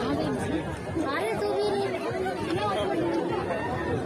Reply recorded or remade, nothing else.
recorded